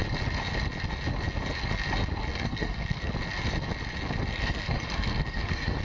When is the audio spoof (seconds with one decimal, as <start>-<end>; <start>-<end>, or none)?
2.3-3.1; 4.3-5.8